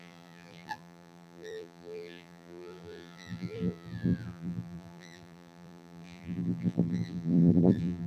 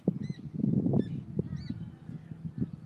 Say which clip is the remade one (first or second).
first